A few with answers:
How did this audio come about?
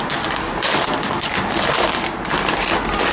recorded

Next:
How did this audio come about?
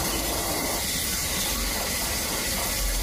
recorded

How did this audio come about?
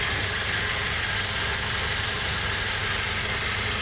recorded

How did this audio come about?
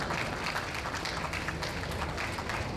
recorded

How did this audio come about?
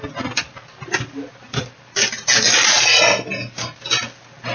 recorded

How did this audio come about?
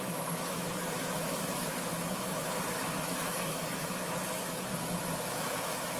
remade